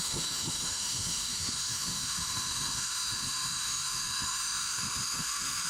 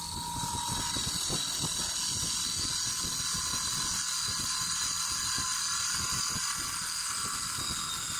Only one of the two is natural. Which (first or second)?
second